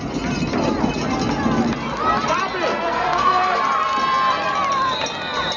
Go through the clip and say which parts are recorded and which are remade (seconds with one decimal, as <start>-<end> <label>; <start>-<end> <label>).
0.0-2.7 recorded; 2.7-3.6 remade; 3.6-5.6 recorded

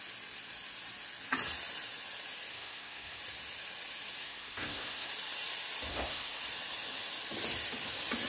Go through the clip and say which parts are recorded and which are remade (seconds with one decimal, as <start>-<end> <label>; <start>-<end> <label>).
0.0-2.5 recorded; 2.5-3.2 remade; 3.2-4.2 recorded; 4.2-5.1 remade; 5.1-5.9 recorded; 5.9-6.4 remade; 6.4-8.3 recorded

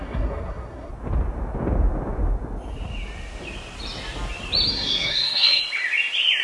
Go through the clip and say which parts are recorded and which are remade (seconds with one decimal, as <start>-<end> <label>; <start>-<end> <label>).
0.0-0.9 remade; 0.9-4.7 recorded; 4.7-5.6 remade; 5.6-6.4 recorded

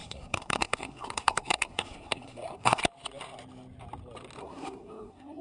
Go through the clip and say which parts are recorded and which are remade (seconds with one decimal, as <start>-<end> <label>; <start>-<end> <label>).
0.0-2.8 remade; 2.8-4.4 recorded; 4.4-5.4 remade